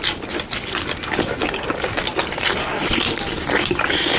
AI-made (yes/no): no